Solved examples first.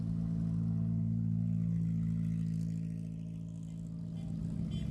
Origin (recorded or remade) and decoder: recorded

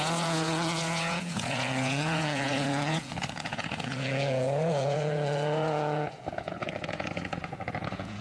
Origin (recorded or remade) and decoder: remade, vocoder, Vocos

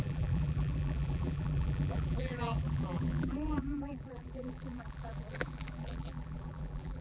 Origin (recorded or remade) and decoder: remade, vocoder, BigVGAN v2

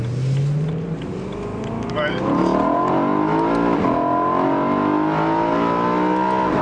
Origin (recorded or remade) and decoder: recorded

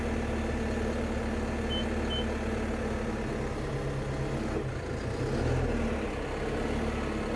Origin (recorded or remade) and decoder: recorded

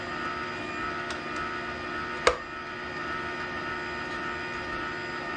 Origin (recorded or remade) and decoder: recorded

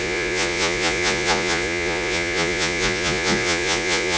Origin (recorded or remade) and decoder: remade, vocoder, Vocos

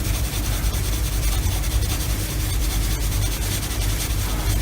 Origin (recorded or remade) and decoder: remade, vocoder, BigVGAN v2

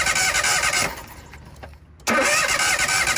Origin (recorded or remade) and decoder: recorded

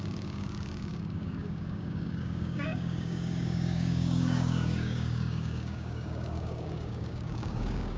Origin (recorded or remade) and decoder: remade, codec, DAC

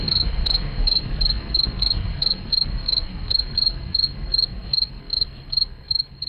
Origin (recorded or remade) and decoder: remade, codec, SNAC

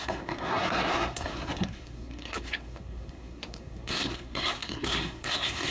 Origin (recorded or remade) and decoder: remade, codec, SNAC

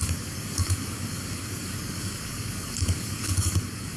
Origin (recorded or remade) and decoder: remade, codec, DAC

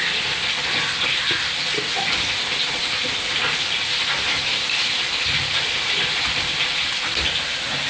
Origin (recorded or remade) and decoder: recorded